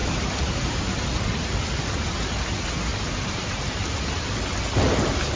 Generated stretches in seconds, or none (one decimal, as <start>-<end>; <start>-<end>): 0.0-1.0; 2.9-4.4